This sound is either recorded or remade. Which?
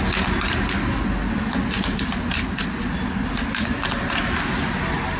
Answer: recorded